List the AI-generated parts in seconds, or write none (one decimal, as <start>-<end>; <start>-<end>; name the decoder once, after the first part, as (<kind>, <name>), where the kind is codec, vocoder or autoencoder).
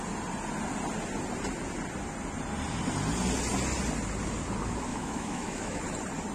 4.9-5.8 (autoencoder, DAC-VAE)